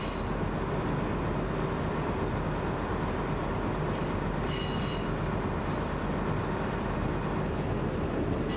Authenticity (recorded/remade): recorded